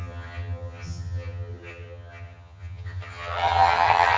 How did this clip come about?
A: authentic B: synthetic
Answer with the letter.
B